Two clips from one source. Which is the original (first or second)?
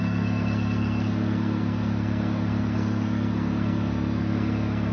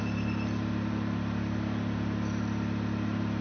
second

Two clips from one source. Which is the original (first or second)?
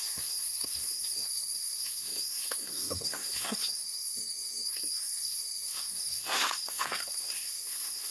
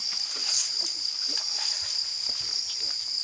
second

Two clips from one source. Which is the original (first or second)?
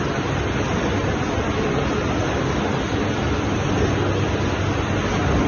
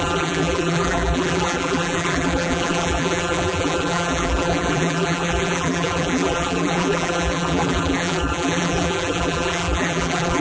first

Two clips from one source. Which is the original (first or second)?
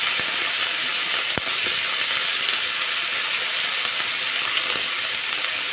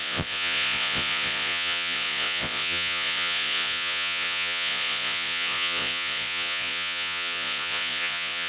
first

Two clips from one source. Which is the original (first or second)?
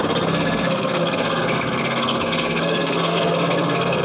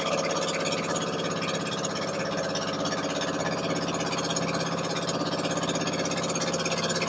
second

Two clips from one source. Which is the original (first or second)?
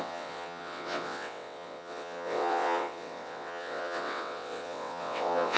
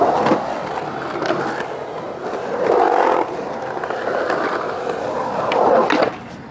second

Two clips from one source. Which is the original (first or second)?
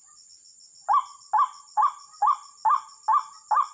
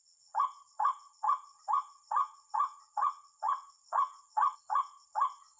first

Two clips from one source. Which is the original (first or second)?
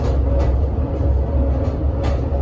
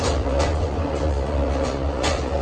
first